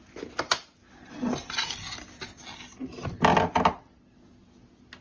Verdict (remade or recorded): recorded